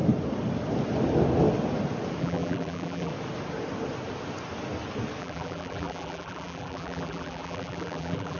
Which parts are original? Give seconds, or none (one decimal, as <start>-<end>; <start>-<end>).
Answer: 0.0-2.2; 3.1-5.2